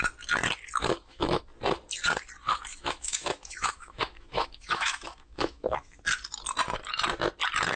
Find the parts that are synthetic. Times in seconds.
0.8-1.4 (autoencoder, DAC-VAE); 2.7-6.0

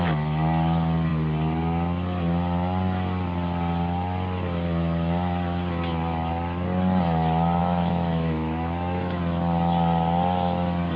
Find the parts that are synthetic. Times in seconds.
7.6-9.2 (autoencoder, DAC-VAE)